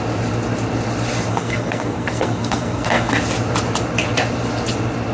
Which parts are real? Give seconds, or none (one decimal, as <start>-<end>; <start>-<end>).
0.0-1.3; 3.1-5.1